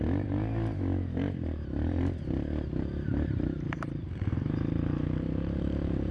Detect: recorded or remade remade